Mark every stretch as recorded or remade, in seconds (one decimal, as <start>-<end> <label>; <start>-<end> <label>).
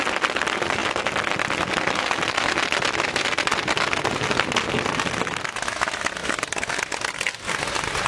0.0-8.1 recorded